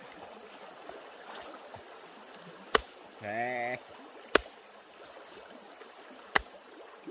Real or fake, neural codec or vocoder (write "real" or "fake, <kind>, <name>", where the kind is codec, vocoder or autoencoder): fake, vocoder, BigVGAN v2